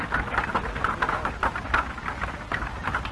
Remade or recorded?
recorded